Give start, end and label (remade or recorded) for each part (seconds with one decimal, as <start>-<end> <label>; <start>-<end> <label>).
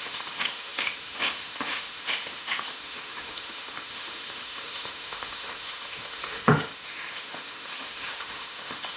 0.0-9.0 remade